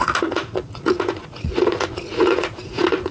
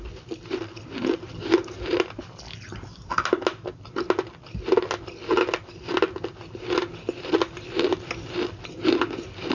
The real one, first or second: second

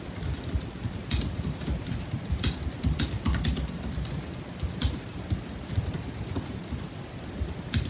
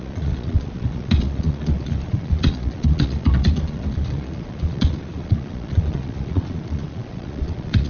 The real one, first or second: first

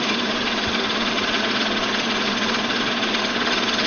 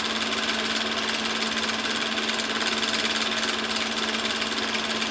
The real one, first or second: second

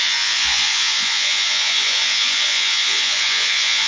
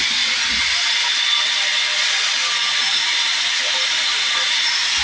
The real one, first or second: second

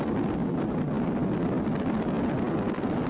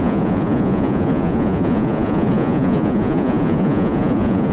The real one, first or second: first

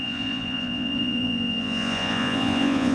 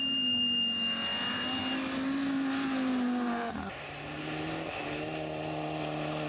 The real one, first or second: second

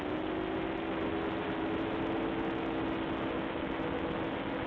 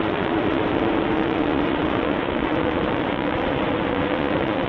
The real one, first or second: first